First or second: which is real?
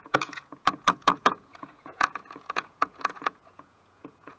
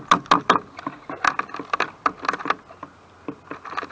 second